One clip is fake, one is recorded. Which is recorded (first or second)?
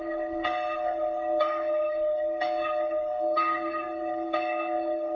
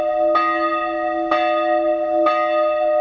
second